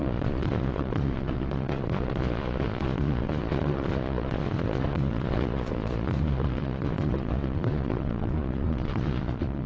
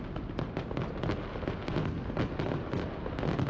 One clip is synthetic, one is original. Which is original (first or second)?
second